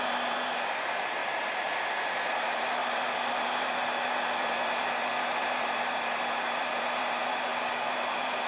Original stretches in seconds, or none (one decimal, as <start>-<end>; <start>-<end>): 1.2-2.3